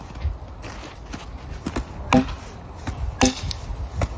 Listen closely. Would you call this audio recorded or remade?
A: recorded